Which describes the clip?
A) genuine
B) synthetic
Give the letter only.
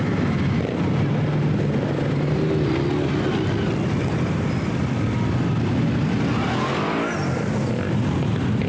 A